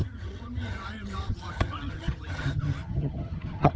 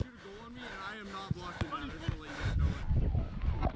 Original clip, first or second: second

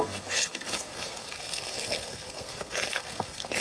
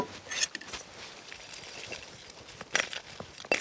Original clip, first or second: second